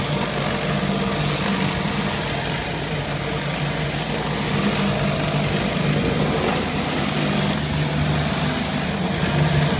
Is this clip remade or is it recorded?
recorded